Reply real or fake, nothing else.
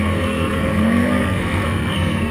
fake